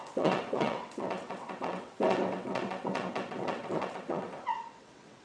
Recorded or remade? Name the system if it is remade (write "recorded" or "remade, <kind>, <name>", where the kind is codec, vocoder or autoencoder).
remade, vocoder, WaveNeXt